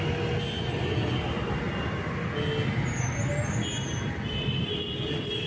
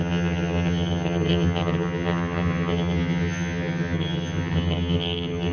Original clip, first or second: first